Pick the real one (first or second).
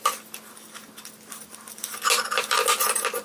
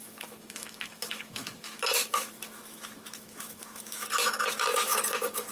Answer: first